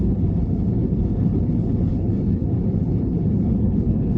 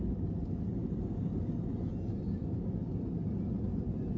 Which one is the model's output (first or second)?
first